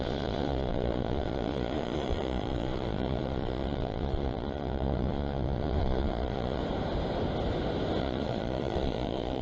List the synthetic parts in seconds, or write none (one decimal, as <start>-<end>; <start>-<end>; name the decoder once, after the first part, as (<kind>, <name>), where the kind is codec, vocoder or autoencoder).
0.0-6.6 (vocoder, Vocos); 8.0-9.4